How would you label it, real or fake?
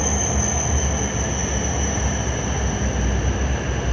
real